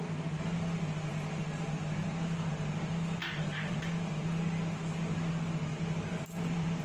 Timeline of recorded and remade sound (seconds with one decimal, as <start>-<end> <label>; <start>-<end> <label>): 0.0-3.2 recorded; 3.2-3.8 remade; 3.8-5.7 recorded; 5.7-6.8 remade